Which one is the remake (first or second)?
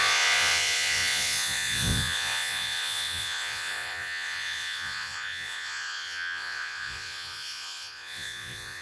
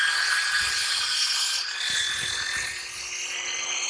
first